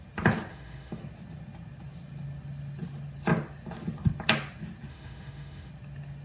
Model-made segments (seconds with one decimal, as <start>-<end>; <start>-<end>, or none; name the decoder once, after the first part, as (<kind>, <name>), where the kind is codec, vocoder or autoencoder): 0.5-1.0 (autoencoder, DAC-VAE); 4.9-5.7